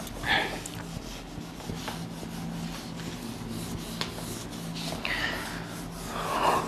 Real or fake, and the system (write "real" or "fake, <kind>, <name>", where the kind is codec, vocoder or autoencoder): real